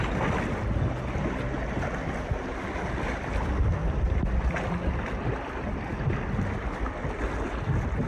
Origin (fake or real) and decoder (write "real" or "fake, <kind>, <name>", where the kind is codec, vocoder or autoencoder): real